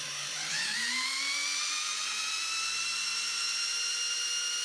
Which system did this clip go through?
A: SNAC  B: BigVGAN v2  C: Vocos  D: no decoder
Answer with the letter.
D